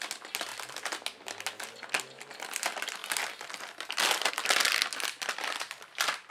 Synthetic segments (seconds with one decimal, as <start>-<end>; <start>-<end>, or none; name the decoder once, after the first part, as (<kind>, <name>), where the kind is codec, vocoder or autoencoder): none